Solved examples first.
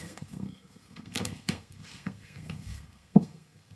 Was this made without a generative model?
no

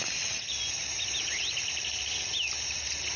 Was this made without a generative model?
yes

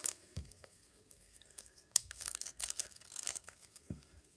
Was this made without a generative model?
no